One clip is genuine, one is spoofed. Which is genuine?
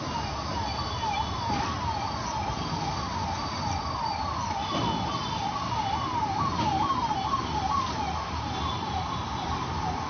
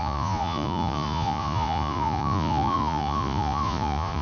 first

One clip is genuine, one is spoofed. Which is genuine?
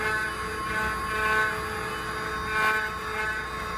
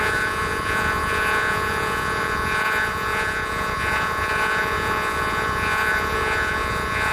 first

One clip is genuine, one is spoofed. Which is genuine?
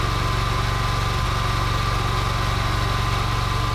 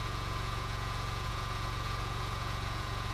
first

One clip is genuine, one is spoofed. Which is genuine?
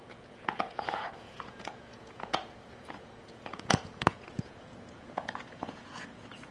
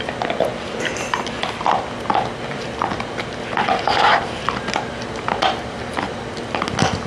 second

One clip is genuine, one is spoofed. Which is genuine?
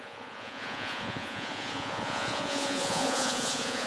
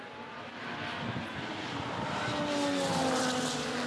second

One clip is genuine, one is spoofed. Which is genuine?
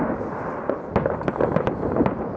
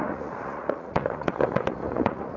first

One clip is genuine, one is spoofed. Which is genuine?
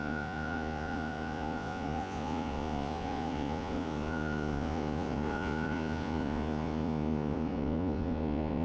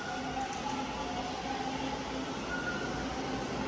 second